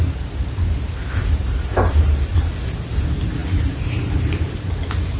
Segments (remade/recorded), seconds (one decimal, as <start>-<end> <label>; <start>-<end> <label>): 0.0-1.2 recorded; 1.2-2.1 remade; 2.1-3.4 recorded; 3.4-4.4 remade; 4.4-5.2 recorded